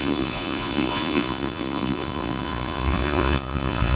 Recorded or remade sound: remade